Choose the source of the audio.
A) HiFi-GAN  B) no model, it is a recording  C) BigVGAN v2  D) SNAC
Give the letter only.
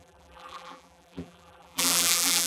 C